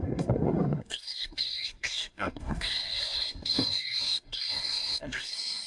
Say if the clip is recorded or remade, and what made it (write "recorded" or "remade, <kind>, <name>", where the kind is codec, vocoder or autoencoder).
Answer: remade, codec, SNAC